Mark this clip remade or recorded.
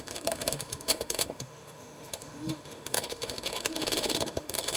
remade